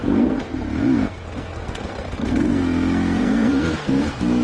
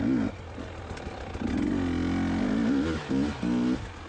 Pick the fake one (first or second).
first